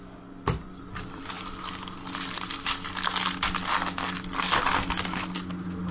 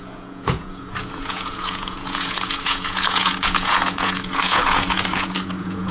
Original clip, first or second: first